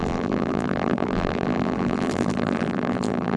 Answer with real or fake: fake